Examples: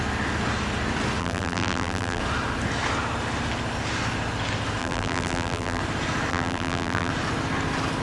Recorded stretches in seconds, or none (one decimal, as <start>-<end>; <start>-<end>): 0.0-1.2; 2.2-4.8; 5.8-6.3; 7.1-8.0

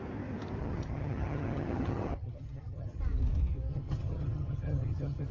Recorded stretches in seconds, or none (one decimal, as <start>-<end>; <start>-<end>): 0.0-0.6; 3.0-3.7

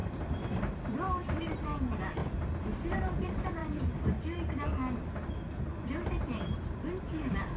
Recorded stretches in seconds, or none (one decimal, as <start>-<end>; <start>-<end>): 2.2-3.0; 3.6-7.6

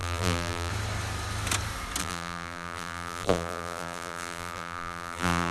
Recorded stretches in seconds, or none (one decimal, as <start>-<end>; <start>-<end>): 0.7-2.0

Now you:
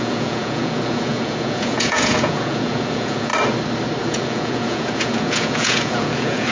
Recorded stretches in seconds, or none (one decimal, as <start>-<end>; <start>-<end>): 3.3-4.0

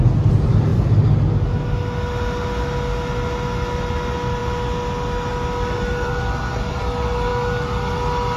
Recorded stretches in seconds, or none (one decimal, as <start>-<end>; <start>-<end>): 0.0-8.4